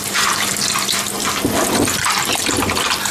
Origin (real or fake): fake